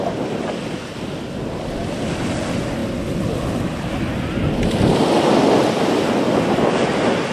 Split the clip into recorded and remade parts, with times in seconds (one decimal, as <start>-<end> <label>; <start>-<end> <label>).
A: 0.0-7.3 recorded